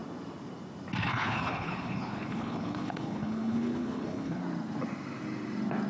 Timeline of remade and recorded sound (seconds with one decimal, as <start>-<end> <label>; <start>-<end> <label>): 0.0-1.0 recorded; 1.0-4.4 remade; 4.4-5.9 recorded

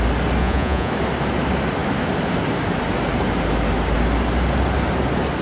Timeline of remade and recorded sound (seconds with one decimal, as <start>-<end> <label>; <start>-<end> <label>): 0.0-0.4 recorded; 0.4-0.9 remade; 0.9-5.4 recorded

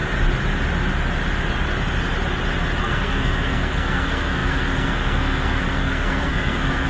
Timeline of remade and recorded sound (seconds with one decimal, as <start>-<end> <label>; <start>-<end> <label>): 0.0-2.8 recorded; 2.8-6.9 remade

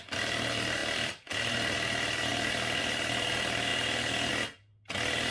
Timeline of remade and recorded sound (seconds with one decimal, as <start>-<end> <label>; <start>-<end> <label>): 0.0-0.8 recorded; 0.8-1.5 remade; 1.5-2.3 recorded; 2.3-2.8 remade; 2.8-3.7 recorded; 3.7-4.3 remade; 4.3-5.3 recorded

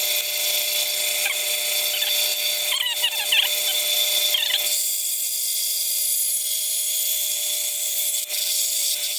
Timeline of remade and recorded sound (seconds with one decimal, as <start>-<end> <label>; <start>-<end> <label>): 0.0-9.2 recorded

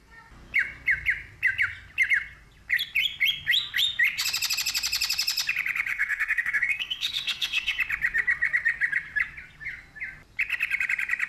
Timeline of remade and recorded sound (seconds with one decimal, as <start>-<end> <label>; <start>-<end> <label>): 0.0-5.9 recorded; 5.9-7.8 remade; 7.8-11.3 recorded

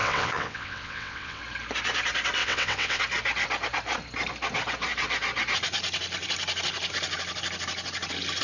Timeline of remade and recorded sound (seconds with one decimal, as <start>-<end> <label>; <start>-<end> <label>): 0.0-1.4 remade; 1.4-2.4 recorded; 2.4-3.0 remade; 3.0-8.4 recorded

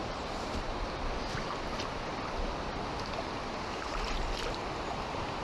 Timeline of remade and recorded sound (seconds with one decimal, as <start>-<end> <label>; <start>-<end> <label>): 0.0-1.0 remade; 1.0-5.4 recorded